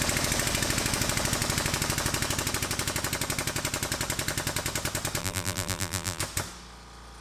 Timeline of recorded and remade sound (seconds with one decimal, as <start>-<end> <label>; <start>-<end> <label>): 0.0-5.2 recorded; 5.2-6.2 remade; 6.2-7.2 recorded